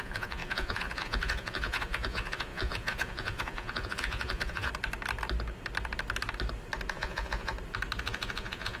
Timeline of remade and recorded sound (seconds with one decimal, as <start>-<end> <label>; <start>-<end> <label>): 0.0-4.7 remade; 4.7-6.9 recorded; 6.9-7.5 remade; 7.5-8.0 recorded; 8.0-8.8 remade